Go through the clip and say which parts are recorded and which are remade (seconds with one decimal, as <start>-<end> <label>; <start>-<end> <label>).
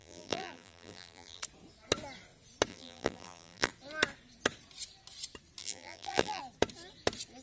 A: 0.0-1.4 remade; 1.4-2.7 recorded; 2.7-3.7 remade; 3.7-5.6 recorded; 5.6-6.4 remade; 6.4-7.4 recorded